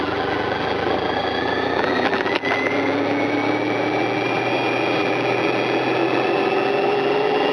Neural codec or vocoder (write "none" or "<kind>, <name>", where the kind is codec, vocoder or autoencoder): vocoder, BigVGAN v2